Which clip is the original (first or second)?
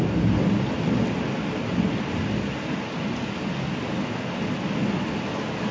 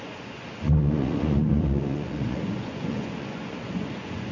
first